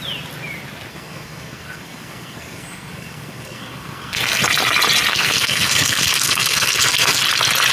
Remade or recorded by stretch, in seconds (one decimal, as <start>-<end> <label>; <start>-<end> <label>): 0.0-0.9 recorded; 0.9-4.4 remade; 4.4-5.1 recorded; 5.1-7.2 remade; 7.2-7.7 recorded